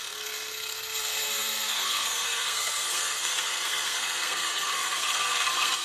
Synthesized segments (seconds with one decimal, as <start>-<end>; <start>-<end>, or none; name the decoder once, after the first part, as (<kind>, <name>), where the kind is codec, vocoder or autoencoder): 0.0-5.8 (codec, SNAC)